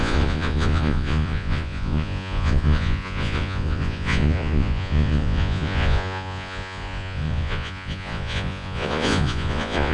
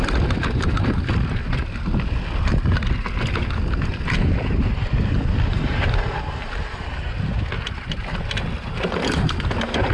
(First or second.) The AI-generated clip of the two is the first